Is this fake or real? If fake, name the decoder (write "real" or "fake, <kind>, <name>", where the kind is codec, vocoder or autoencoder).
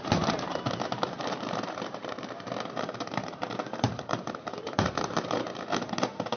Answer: fake, vocoder, BigVGAN v2